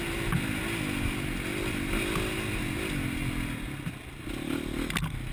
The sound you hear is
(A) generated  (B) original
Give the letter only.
B